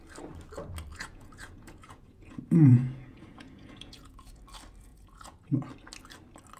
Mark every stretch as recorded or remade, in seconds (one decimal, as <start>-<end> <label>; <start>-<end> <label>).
0.0-0.9 recorded; 0.9-4.4 remade; 4.4-4.9 recorded; 4.9-5.7 remade; 5.7-6.6 recorded